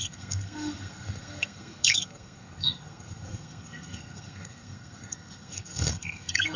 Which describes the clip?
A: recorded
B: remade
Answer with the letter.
B